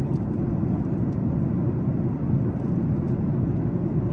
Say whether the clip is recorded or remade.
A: recorded